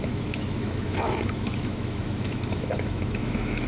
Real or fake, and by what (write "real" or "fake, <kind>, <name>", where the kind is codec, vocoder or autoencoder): fake, autoencoder, DAC-VAE